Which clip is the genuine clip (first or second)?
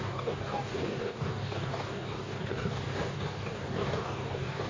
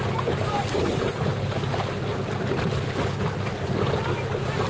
second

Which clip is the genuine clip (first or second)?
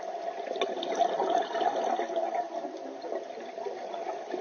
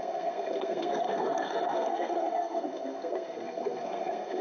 first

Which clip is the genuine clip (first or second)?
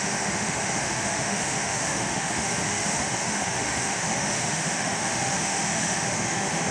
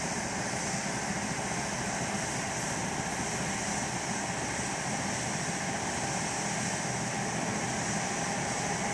second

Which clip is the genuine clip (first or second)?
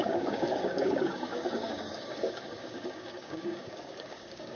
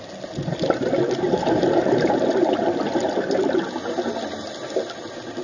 second